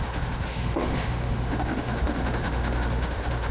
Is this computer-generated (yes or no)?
yes